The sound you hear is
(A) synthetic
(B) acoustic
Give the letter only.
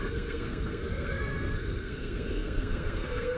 A